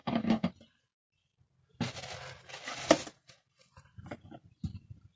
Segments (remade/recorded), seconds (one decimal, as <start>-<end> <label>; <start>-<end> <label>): 0.0-0.5 remade; 0.5-5.2 recorded